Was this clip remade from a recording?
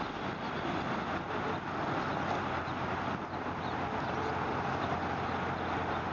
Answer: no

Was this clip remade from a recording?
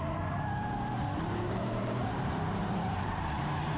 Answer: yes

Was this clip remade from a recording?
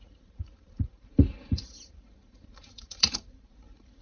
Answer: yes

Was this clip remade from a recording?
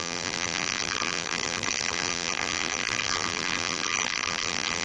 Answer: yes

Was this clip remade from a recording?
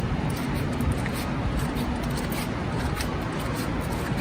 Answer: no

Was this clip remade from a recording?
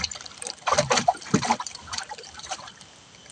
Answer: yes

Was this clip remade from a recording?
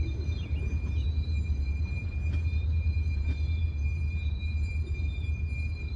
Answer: yes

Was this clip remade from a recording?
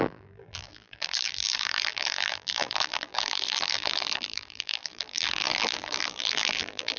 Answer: yes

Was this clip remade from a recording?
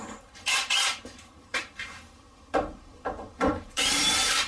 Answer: yes